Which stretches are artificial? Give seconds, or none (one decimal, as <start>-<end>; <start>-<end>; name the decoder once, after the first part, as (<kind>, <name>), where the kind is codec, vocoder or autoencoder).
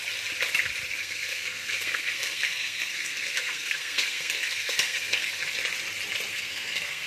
1.0-5.3 (codec, SNAC); 6.3-7.1